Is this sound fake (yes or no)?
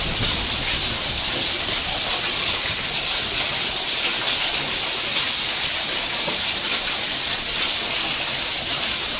no